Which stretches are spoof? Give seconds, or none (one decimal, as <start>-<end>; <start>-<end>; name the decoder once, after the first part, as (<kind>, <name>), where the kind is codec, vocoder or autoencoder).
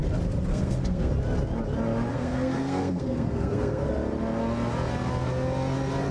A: 0.5-1.1 (codec, SNAC); 2.1-3.9